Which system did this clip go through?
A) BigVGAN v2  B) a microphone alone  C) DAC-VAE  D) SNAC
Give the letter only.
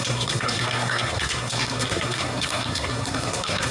D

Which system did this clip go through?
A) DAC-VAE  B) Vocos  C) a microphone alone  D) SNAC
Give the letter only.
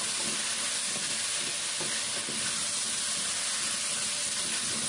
C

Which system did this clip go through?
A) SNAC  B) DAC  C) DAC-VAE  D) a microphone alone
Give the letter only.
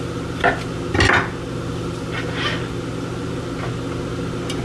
D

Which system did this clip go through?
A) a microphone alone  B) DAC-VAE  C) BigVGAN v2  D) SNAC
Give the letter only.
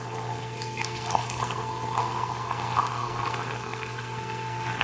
D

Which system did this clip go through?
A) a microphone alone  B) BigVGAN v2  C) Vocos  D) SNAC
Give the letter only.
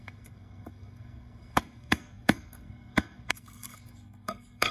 D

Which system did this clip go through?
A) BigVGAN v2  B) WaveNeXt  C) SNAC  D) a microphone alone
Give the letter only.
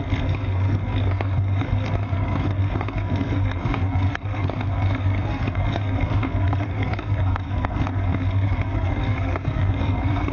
C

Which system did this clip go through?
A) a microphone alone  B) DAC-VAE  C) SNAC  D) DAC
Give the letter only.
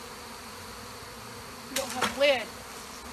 A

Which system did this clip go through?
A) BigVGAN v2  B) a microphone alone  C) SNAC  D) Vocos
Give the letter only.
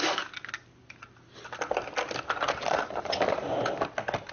B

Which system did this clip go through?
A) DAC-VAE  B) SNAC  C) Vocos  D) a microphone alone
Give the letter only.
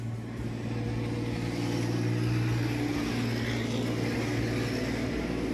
D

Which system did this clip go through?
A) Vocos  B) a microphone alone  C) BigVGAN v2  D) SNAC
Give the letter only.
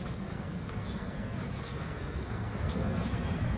D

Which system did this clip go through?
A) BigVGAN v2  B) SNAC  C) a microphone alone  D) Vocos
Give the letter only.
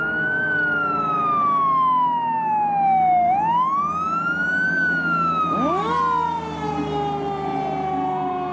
C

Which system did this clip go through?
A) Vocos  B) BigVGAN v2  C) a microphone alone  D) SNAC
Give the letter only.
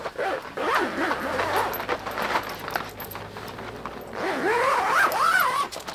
C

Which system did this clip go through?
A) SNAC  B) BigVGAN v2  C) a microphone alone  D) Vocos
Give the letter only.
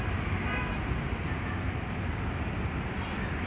C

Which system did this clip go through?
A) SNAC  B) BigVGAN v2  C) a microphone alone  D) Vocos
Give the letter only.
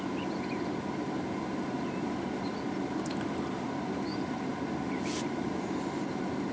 C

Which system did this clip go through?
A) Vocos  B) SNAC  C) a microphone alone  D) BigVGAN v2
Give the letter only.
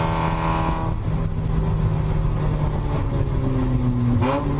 C